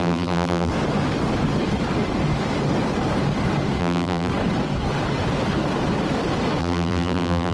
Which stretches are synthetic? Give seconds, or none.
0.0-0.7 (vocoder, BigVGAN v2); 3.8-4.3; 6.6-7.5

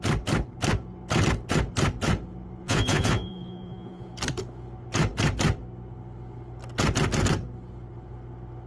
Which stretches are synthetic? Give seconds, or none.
2.6-4.1 (vocoder, Vocos)

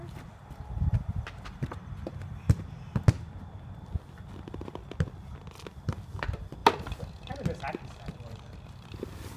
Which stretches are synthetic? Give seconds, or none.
none

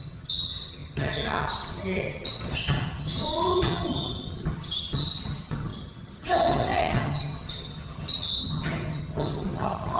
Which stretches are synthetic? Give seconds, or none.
0.0-10.0 (vocoder, HiFi-GAN)

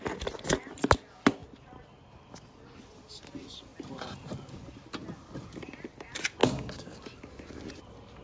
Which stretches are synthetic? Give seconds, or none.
6.4-7.0 (codec, DAC)

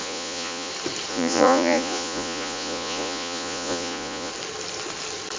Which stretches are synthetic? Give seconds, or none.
0.0-0.7 (vocoder, Vocos); 1.1-4.3

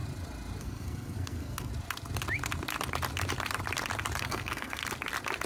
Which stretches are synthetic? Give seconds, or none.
0.6-1.7 (codec, SNAC); 4.2-4.8